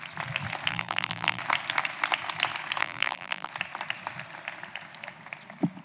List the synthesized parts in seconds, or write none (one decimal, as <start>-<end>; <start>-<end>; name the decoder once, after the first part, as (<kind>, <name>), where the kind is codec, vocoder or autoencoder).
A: 0.7-1.4 (vocoder, BigVGAN v2); 2.8-3.5